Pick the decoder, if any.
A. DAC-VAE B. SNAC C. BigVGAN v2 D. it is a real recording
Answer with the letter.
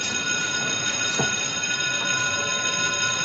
D